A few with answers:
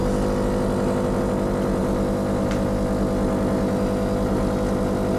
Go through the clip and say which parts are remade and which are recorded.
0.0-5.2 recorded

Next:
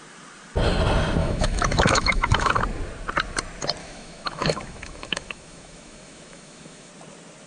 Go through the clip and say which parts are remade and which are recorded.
0.0-1.2 recorded; 1.2-2.6 remade; 2.6-3.8 recorded; 3.8-6.9 remade; 6.9-7.5 recorded